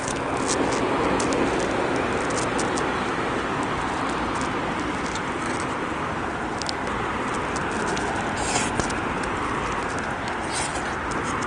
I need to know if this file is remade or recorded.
recorded